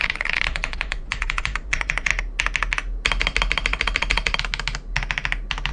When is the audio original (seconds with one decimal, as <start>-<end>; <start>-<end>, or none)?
2.1-5.7